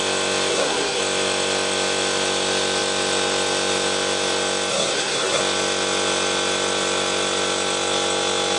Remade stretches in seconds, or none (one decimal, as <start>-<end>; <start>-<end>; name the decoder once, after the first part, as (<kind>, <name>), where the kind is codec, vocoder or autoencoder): 0.5-1.0 (codec, SNAC); 4.7-5.4